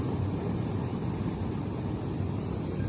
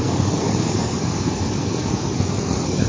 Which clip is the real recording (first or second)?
first